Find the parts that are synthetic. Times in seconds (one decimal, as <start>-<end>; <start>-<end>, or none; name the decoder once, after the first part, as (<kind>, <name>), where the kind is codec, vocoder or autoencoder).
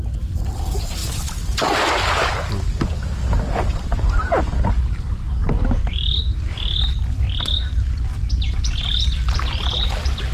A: 5.4-6.2 (vocoder, BigVGAN v2)